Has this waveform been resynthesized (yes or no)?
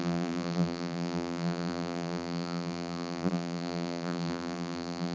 yes